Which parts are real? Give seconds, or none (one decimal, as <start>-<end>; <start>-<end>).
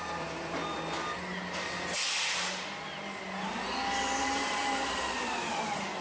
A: 0.6-4.2